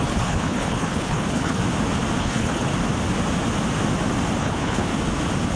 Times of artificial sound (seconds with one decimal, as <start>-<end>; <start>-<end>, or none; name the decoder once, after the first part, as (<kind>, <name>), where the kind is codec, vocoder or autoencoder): 0.0-1.6 (codec, HILCodec); 2.2-2.7; 4.4-4.9